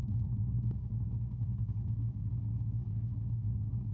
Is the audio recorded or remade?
remade